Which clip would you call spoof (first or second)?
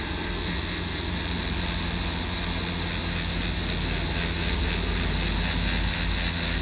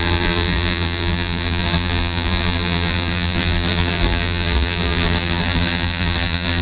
second